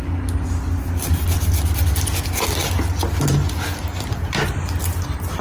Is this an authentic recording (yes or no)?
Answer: yes